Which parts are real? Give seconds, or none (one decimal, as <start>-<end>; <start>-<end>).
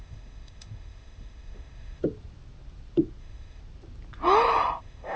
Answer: 2.0-3.2; 3.6-4.8